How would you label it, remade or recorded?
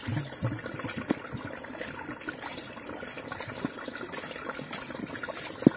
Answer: recorded